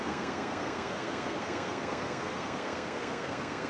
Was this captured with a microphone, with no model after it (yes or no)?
no